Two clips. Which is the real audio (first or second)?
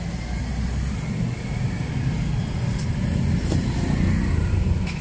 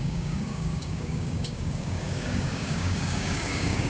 first